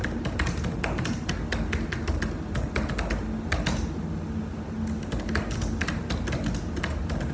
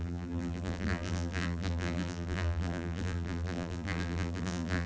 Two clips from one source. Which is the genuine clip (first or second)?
first